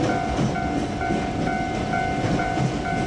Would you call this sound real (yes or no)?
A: yes